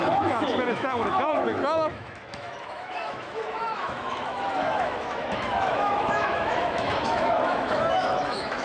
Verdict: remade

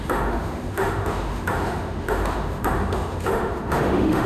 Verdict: remade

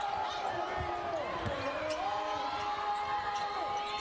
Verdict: recorded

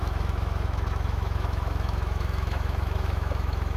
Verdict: remade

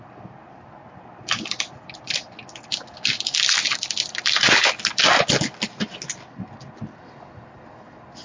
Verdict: recorded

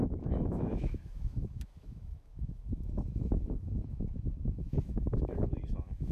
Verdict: remade